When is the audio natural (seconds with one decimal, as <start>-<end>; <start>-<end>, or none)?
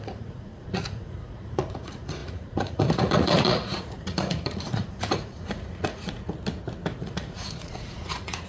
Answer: 6.3-7.0